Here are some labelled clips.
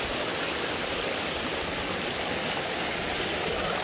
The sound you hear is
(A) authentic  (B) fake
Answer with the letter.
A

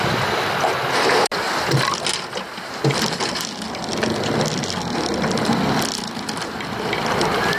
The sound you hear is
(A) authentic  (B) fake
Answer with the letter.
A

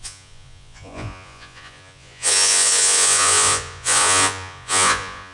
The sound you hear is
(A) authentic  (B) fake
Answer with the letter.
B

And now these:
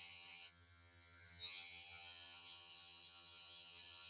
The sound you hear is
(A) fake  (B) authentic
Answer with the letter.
A